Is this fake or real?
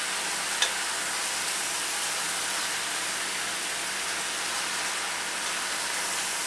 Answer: real